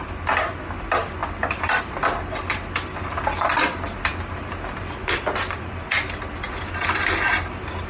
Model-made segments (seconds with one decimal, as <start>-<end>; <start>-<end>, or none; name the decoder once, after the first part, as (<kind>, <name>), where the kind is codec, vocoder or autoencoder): none